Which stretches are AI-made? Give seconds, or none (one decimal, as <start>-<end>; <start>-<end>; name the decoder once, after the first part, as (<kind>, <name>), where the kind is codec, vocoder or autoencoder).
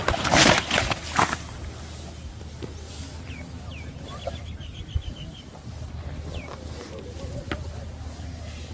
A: none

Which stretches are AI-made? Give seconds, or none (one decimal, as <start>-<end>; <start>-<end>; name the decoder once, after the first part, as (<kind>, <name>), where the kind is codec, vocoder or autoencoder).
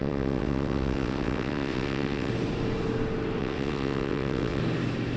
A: 0.0-2.3 (vocoder, WaveNeXt); 3.4-4.6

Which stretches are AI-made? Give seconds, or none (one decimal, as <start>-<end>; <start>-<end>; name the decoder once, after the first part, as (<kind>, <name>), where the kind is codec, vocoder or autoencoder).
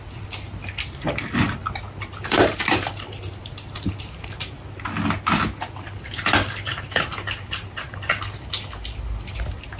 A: none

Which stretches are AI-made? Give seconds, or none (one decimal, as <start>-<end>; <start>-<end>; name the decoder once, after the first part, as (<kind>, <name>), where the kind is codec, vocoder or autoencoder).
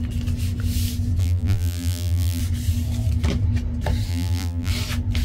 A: 1.2-2.4 (vocoder, BigVGAN v2); 4.1-4.7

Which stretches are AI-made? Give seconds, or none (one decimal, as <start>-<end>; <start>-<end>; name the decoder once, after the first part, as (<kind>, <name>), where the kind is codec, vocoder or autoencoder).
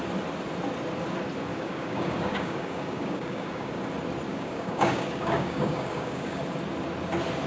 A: 1.5-3.8 (codec, DAC); 4.3-6.4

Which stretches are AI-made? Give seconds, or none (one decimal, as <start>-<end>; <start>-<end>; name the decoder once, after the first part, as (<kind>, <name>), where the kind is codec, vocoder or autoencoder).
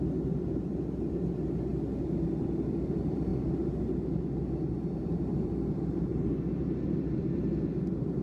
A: 0.0-1.7 (vocoder, BigVGAN v2); 2.4-3.3; 5.0-6.1; 6.6-8.2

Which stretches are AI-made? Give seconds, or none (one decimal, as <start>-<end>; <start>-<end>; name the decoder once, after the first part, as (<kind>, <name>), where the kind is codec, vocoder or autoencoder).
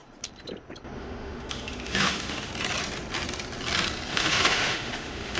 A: 1.0-2.5 (autoencoder, DAC-VAE); 4.1-5.4